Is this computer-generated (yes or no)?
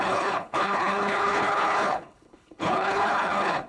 yes